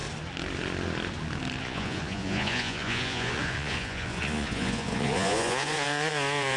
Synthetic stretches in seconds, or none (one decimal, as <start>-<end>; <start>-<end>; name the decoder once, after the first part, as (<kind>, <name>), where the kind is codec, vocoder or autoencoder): 1.6-6.6 (vocoder, Vocos)

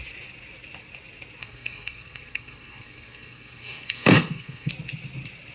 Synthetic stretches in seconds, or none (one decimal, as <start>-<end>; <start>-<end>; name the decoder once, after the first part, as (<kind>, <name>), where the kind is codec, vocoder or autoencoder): 1.4-4.7 (codec, SNAC)

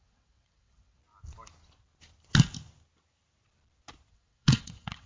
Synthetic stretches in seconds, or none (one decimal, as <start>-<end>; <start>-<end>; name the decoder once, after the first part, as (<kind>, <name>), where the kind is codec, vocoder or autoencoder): 0.0-1.0 (vocoder, WaveNeXt); 4.1-5.1

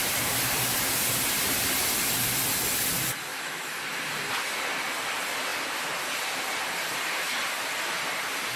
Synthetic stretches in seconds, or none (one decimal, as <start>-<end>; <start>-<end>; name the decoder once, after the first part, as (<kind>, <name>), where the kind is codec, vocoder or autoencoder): 3.3-3.8 (autoencoder, DAC-VAE)

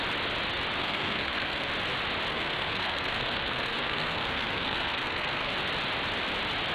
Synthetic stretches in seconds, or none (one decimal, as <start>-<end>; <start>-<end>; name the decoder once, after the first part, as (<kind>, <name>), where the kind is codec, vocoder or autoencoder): 0.8-1.7 (codec, SNAC); 2.3-5.5